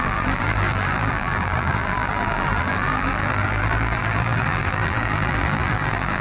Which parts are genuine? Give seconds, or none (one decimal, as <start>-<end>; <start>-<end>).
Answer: none